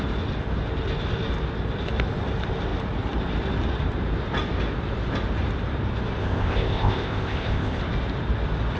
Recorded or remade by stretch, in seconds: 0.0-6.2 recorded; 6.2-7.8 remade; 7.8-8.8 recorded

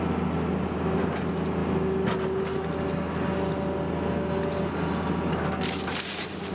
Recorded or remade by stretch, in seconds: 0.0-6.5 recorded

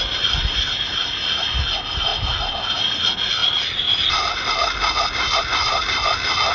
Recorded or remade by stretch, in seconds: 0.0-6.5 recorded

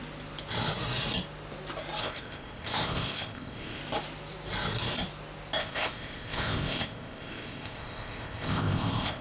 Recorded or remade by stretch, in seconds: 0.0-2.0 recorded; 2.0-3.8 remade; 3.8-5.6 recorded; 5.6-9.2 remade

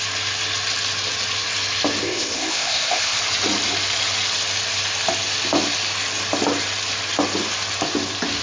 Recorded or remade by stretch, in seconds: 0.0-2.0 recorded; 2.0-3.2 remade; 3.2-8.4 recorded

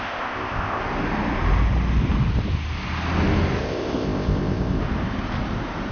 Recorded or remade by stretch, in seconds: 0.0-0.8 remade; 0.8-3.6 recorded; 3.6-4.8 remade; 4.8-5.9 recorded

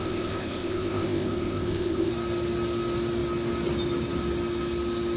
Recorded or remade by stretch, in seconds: 0.0-2.1 remade; 2.1-5.2 recorded